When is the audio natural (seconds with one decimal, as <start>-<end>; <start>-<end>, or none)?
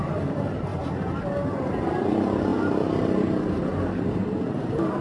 none